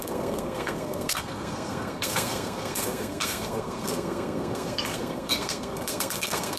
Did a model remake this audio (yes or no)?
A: yes